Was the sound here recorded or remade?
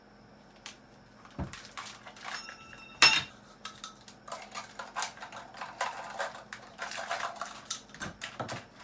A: recorded